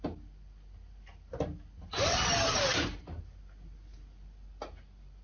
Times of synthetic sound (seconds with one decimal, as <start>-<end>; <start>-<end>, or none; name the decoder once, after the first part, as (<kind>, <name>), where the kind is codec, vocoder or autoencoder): 2.1-2.6 (vocoder, HiFi-GAN)